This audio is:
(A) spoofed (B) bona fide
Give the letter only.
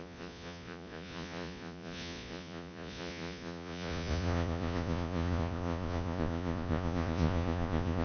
A